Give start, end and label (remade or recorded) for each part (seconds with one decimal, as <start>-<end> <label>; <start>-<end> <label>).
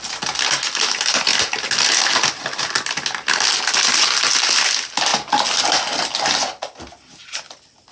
0.0-7.9 recorded